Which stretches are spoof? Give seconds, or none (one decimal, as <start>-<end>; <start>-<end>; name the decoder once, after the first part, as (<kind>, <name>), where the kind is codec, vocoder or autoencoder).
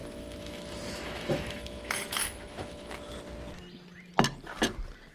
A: 0.0-3.1 (autoencoder, DAC-VAE)